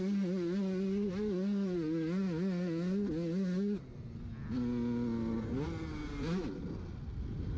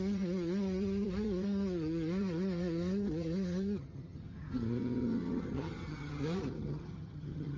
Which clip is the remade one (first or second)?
second